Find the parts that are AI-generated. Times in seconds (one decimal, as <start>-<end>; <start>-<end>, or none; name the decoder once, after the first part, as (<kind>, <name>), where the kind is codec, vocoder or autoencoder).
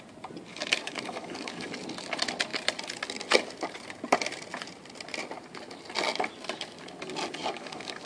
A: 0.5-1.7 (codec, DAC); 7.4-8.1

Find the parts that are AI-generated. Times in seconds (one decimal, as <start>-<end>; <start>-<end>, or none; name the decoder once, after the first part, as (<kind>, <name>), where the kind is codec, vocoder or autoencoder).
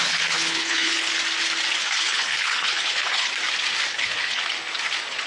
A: 0.0-1.1 (codec, HILCodec); 1.8-3.3; 3.9-4.4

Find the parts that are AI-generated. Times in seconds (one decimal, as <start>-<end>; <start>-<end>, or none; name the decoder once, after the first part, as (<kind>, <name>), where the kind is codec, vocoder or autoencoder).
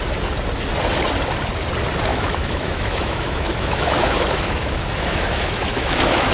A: 2.1-6.3 (autoencoder, DAC-VAE)